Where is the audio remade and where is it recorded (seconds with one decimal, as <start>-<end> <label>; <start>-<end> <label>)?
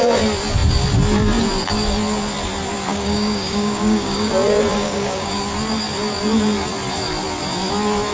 0.0-2.9 recorded; 2.9-4.3 remade; 4.3-4.7 recorded; 4.7-5.3 remade; 5.3-8.1 recorded